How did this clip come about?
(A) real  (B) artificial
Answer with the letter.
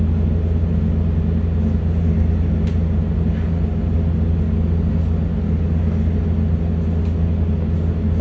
A